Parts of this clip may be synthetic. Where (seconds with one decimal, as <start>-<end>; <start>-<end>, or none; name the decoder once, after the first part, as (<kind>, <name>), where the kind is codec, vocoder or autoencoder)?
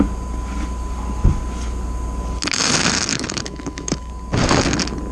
3.1-4.1 (autoencoder, DAC-VAE)